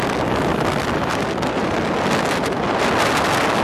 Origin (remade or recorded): recorded